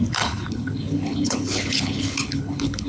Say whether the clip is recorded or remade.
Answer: remade